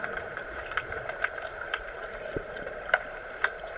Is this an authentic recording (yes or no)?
no